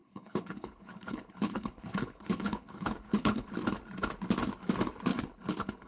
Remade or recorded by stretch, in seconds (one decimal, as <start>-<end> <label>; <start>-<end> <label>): 0.0-3.5 remade; 3.5-5.1 recorded; 5.1-5.9 remade